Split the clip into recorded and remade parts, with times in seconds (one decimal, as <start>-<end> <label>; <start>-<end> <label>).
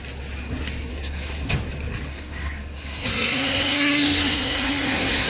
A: 0.0-0.9 recorded; 0.9-1.5 remade; 1.5-2.1 recorded; 2.1-5.3 remade